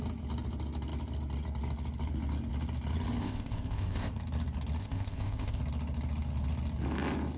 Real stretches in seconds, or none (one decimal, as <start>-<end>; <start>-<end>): 0.0-3.2; 4.1-4.8; 5.6-7.4